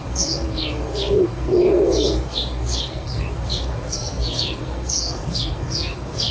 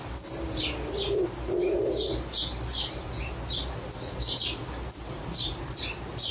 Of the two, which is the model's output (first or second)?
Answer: first